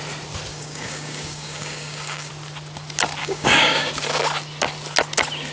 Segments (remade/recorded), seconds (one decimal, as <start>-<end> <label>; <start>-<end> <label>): 0.0-0.5 recorded; 0.5-2.3 remade; 2.3-3.2 recorded; 3.2-3.9 remade; 3.9-5.5 recorded